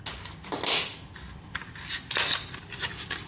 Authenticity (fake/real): real